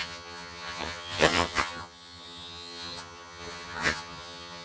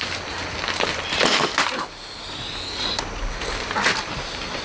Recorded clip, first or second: second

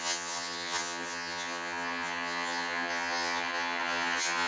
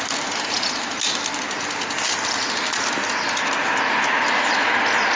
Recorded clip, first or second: second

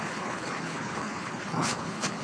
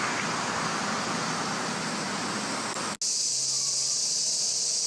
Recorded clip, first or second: second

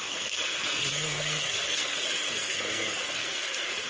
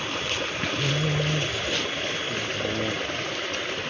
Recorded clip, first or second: second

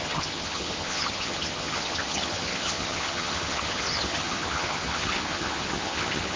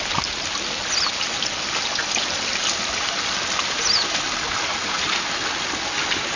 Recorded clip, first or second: second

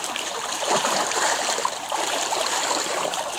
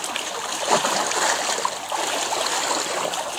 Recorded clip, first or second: second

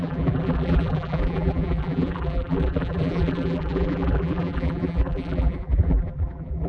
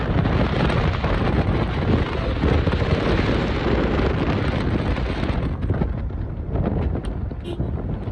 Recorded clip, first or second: second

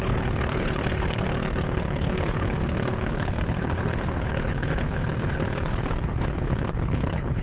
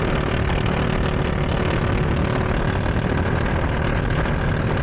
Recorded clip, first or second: second